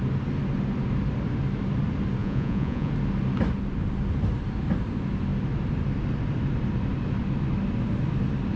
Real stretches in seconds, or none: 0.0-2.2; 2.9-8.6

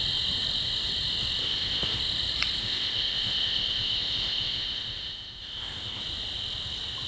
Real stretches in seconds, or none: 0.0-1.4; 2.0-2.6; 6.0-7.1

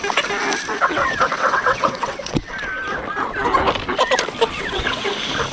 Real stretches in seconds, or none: 0.0-0.7; 2.5-4.5; 5.1-5.5

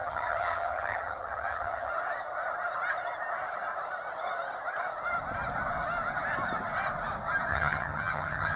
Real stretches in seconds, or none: 1.9-7.5

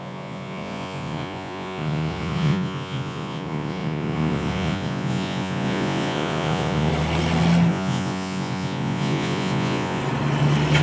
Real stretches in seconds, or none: 6.9-7.7; 10.0-10.8

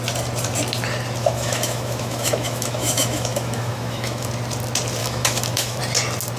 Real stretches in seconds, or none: 0.0-1.2; 4.3-5.0; 5.8-6.4